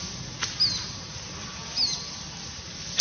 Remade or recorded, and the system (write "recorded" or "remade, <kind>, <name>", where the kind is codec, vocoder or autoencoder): recorded